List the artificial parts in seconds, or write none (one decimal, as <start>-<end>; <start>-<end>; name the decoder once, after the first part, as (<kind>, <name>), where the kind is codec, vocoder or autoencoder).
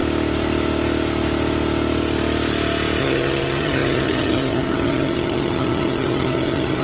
3.0-6.8 (vocoder, HiFi-GAN)